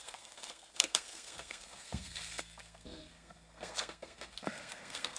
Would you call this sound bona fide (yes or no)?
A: no